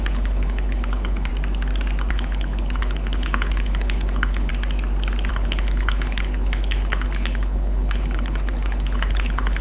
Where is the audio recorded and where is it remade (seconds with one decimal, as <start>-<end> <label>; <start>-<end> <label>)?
0.0-1.3 remade; 1.3-2.1 recorded; 2.1-4.5 remade; 4.5-5.3 recorded; 5.3-9.6 remade